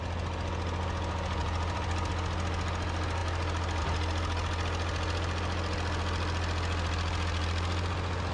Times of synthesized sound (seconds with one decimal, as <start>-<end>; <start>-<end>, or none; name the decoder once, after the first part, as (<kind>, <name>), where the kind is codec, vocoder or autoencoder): 1.4-2.1 (vocoder, BigVGAN v2)